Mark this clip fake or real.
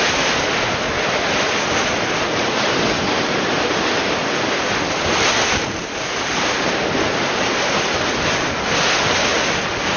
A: real